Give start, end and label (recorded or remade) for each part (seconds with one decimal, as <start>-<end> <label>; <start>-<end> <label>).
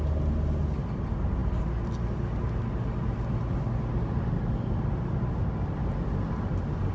0.0-6.9 recorded